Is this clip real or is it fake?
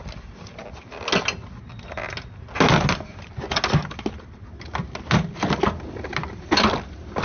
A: real